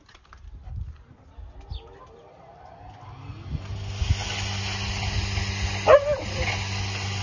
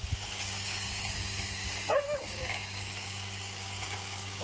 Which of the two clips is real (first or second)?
first